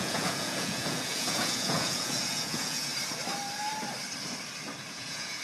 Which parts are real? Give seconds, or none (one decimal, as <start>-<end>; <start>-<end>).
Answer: 2.9-4.9